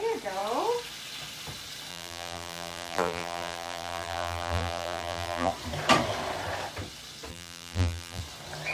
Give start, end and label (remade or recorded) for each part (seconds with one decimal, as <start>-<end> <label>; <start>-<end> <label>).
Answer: 0.0-1.9 recorded; 1.9-5.5 remade; 5.5-7.3 recorded; 7.3-8.2 remade; 8.2-8.7 recorded